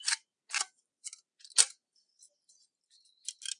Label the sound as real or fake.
real